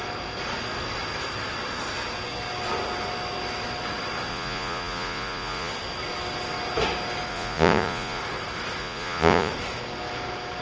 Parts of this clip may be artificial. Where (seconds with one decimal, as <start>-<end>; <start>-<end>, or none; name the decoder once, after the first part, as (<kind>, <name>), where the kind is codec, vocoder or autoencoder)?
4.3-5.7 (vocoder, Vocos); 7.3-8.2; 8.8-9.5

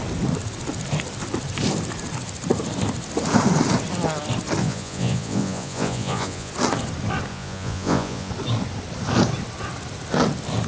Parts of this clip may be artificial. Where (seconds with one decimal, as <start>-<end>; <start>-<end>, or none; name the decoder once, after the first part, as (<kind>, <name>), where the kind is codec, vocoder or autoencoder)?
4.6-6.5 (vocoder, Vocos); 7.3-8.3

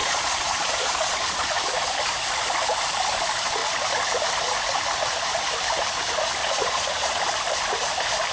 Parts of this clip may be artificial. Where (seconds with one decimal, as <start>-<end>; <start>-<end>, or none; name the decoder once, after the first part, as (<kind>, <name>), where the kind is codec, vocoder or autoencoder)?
0.0-1.6 (vocoder, Vocos); 6.4-7.2

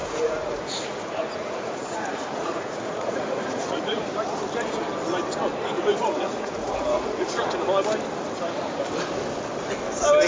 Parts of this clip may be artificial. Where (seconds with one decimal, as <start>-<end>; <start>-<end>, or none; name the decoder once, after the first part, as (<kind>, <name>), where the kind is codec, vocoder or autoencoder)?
0.0-4.1 (vocoder, Vocos); 6.0-7.5